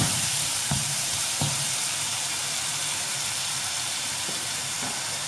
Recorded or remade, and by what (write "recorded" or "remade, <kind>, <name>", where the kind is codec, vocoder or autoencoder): remade, vocoder, BigVGAN v2